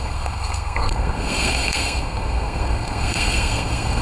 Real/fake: fake